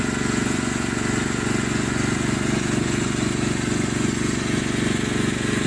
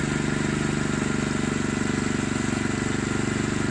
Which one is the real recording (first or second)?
second